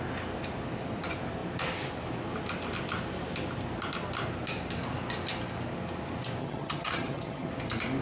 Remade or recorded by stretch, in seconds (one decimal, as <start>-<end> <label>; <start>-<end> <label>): 0.0-6.4 recorded; 6.4-7.5 remade; 7.5-8.0 recorded